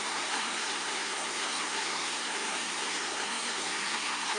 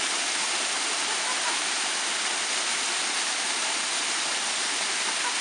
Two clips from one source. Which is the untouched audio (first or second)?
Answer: second